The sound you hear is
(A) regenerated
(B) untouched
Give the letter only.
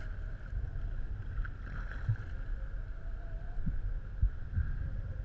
B